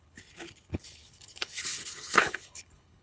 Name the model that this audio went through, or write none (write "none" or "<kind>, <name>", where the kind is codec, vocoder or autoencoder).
codec, HILCodec